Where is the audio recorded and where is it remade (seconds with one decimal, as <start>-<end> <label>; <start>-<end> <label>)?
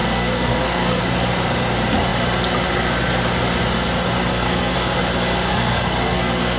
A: 0.0-1.0 remade; 1.0-4.3 recorded; 4.3-5.0 remade; 5.0-5.5 recorded; 5.5-6.6 remade